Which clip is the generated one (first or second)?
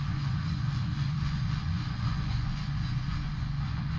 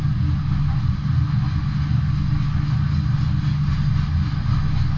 first